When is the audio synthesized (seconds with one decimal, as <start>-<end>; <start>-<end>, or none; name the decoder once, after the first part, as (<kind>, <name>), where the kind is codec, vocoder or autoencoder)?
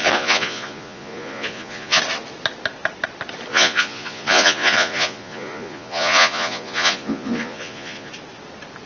0.0-2.0 (vocoder, Vocos); 3.5-8.1